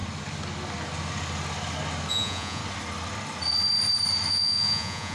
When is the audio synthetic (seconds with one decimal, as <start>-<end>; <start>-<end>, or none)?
2.1-2.6; 4.3-5.1